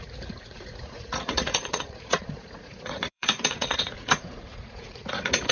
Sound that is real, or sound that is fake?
fake